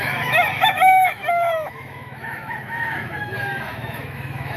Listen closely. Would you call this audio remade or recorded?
remade